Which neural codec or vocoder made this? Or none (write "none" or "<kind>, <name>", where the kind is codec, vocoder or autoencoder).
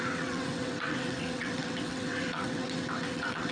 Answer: vocoder, WaveNeXt